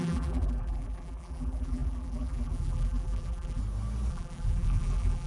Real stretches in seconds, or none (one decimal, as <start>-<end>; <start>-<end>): 3.6-4.1